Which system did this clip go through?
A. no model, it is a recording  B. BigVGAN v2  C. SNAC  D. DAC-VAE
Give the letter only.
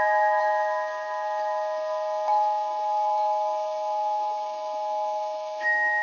D